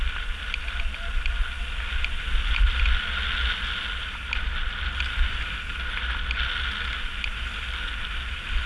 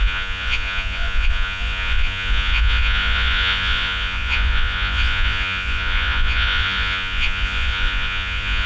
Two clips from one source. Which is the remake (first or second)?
second